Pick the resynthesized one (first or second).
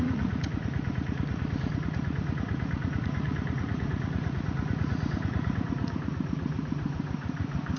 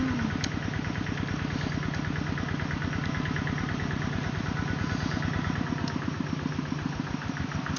first